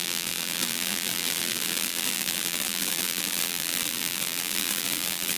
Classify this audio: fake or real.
fake